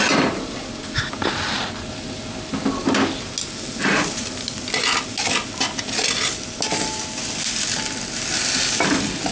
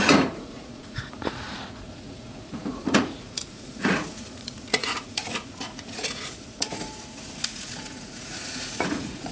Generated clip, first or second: second